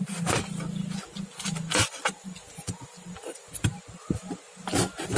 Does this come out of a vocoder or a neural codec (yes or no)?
no